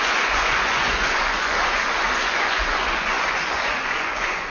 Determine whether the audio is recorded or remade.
remade